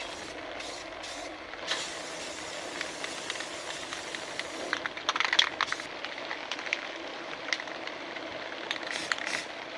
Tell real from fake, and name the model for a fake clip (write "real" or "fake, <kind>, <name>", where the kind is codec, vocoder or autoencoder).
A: real